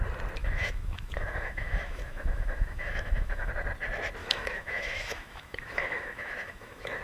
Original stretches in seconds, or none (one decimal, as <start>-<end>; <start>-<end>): 0.0-0.4; 3.5-4.2